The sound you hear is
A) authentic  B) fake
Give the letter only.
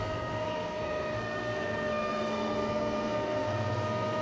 B